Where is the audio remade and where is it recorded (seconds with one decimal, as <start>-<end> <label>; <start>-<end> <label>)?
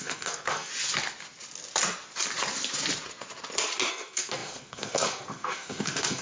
0.0-0.7 remade; 0.7-3.9 recorded; 3.9-6.2 remade